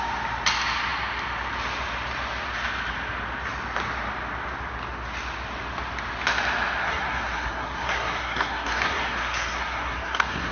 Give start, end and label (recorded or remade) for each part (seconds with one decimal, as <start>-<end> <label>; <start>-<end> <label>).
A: 0.0-6.8 recorded; 6.8-10.5 remade